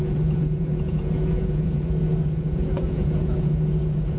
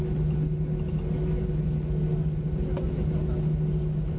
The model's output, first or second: first